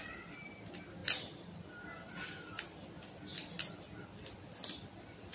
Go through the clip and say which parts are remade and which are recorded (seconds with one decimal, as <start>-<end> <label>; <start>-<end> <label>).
0.0-5.3 recorded